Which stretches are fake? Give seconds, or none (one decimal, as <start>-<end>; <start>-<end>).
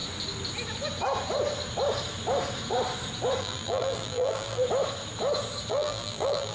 3.4-4.6; 5.7-6.5